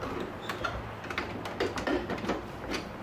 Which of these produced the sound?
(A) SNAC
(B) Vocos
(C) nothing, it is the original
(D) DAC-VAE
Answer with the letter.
C